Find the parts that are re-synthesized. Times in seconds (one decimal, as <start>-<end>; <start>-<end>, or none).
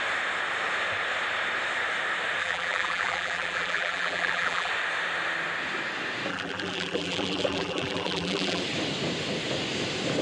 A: 2.4-4.7; 6.3-8.6